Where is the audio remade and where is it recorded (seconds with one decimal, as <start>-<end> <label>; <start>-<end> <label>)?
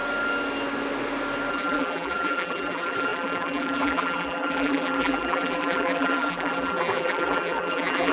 0.0-1.5 recorded; 1.5-8.1 remade